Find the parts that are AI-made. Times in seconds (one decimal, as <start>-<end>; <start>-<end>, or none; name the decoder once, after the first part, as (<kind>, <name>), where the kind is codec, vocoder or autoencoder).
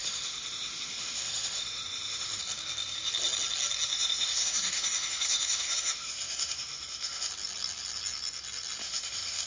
0.0-2.4 (autoencoder, DAC-VAE); 3.9-7.3; 8.8-9.5